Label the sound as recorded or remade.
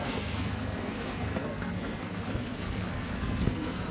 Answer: remade